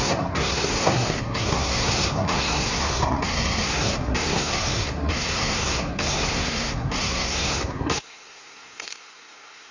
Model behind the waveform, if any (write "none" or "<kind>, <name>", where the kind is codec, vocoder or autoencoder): codec, SNAC